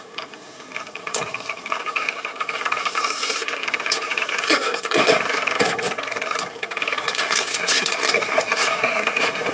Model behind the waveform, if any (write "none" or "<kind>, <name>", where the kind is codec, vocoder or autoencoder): codec, SNAC